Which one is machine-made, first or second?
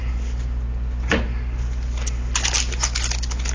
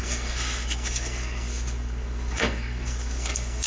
second